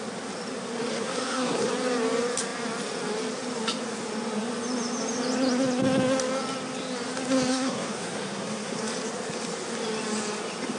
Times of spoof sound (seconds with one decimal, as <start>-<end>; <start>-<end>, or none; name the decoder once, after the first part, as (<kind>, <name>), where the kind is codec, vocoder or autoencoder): 0.9-1.7 (codec, SNAC); 7.5-8.8